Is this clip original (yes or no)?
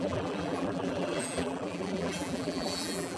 no